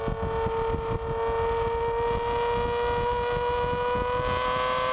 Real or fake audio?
real